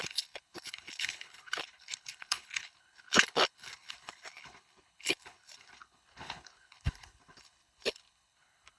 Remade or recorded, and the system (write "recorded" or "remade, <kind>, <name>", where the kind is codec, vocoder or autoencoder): remade, codec, HILCodec